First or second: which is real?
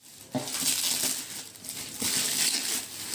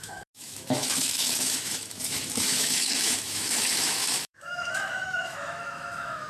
first